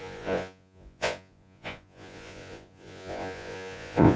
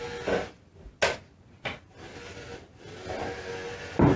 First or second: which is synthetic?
first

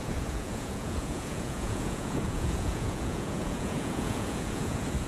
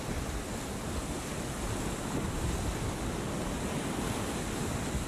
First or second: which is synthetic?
first